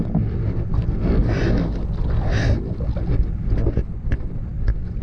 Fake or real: real